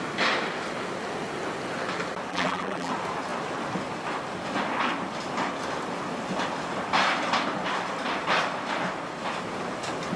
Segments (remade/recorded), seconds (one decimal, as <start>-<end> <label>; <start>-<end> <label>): 0.0-2.3 recorded; 2.3-2.9 remade; 2.9-10.2 recorded